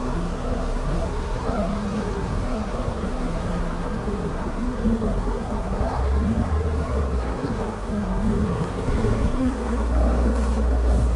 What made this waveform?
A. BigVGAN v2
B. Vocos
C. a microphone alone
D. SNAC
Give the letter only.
D